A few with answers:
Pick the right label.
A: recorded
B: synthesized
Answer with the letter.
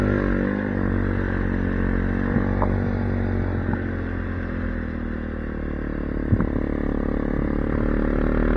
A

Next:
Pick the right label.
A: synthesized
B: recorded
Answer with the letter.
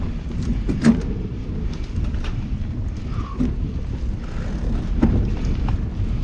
B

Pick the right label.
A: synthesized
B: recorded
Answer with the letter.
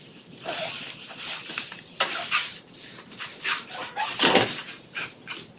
A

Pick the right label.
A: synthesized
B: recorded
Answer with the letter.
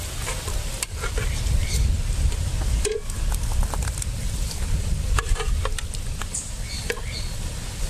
A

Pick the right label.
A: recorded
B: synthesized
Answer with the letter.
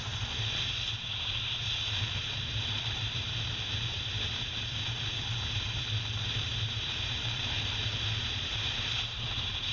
B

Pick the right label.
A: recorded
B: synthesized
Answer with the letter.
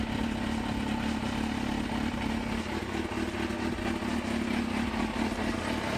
A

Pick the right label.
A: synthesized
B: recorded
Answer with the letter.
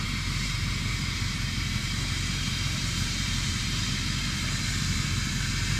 A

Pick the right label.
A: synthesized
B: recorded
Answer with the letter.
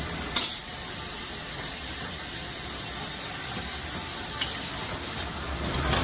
A